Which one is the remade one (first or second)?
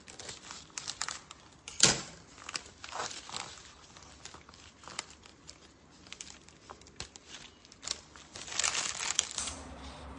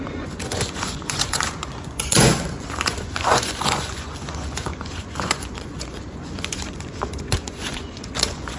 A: second